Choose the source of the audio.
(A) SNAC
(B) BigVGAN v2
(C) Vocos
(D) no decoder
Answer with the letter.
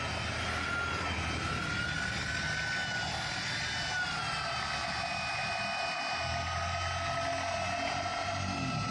D